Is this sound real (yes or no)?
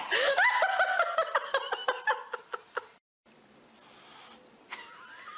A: yes